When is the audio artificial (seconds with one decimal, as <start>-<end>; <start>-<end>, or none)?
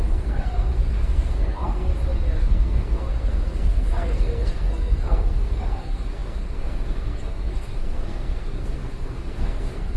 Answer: 0.0-1.9; 2.4-10.0